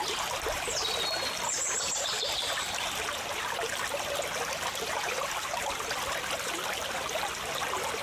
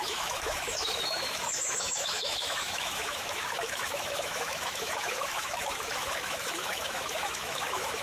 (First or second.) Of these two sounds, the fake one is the second